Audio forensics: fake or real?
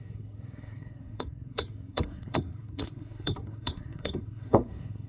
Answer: fake